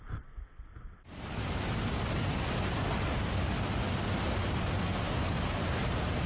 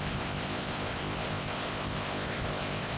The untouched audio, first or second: first